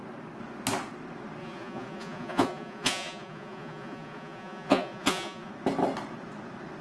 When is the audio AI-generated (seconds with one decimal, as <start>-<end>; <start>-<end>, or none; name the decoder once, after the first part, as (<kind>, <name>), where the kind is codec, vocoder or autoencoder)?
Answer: 1.4-5.5 (vocoder, Vocos)